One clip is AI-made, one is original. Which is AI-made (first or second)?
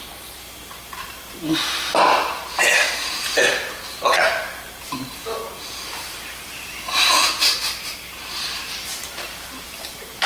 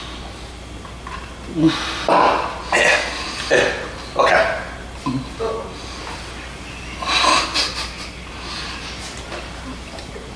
first